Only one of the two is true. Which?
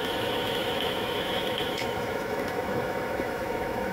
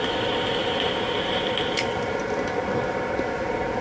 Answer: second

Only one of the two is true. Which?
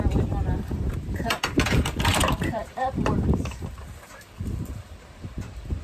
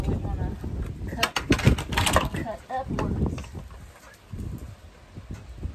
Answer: second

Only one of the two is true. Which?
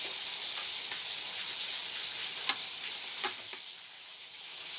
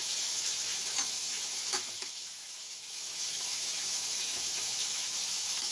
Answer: first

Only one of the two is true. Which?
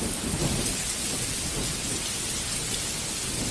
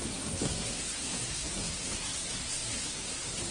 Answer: first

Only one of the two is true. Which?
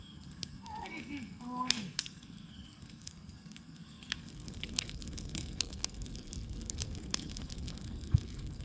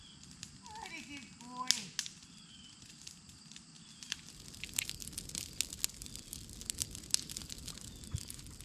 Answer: second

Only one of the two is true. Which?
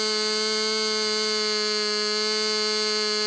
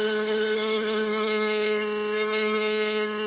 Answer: first